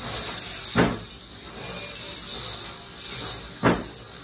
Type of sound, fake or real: real